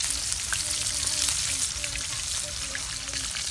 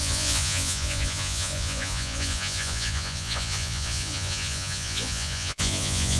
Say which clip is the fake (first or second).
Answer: second